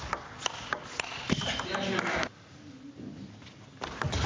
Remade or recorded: recorded